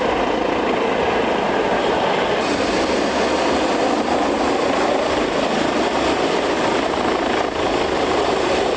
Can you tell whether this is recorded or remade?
recorded